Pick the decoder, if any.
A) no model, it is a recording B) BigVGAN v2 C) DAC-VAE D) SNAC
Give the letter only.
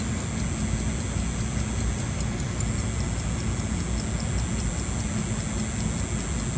A